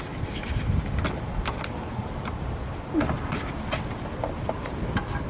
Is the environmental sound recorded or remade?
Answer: recorded